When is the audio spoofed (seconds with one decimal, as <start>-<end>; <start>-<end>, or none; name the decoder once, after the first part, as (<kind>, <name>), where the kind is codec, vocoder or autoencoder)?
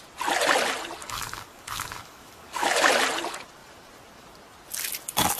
1.0-2.9 (codec, DAC)